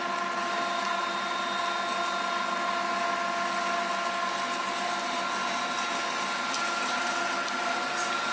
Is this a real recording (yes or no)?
yes